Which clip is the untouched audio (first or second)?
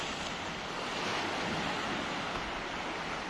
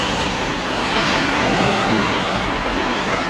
first